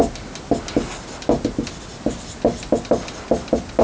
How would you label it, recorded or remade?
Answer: recorded